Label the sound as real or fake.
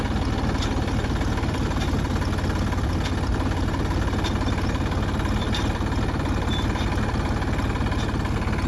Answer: real